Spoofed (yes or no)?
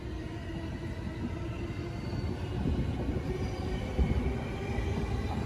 no